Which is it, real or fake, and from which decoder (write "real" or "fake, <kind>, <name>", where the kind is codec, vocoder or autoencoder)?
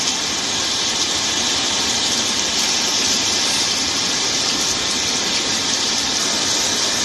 real